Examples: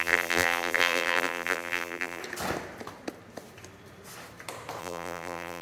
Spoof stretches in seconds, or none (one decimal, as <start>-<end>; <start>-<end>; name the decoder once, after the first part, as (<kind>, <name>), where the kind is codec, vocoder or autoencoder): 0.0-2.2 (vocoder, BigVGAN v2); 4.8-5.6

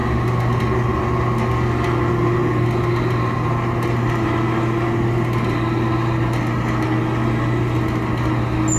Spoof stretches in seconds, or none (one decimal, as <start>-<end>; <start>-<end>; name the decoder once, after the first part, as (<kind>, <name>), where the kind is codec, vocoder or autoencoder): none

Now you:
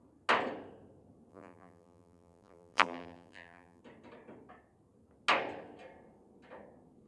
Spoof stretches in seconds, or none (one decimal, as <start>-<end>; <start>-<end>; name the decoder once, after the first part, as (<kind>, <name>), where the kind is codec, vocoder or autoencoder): 1.3-3.8 (vocoder, BigVGAN v2)

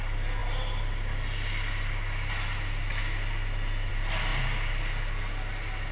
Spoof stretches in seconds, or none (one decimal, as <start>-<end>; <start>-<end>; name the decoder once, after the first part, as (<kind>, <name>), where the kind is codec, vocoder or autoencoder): none